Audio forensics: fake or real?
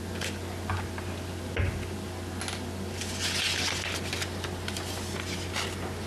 real